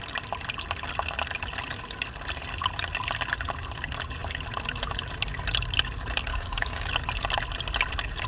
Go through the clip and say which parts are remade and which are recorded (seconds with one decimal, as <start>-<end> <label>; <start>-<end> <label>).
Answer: 0.0-6.3 recorded; 6.3-6.9 remade; 6.9-8.3 recorded